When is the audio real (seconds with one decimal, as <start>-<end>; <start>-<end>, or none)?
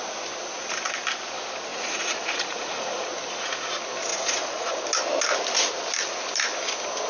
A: 0.0-1.7; 3.1-4.1; 4.8-7.1